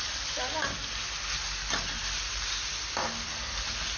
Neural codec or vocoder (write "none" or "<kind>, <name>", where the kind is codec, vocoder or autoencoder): none